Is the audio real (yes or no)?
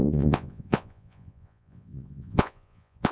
no